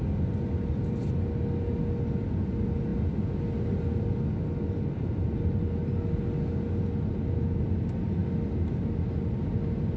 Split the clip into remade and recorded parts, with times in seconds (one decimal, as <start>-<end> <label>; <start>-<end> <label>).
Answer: 0.0-10.0 recorded